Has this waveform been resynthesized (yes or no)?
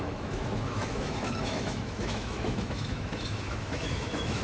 yes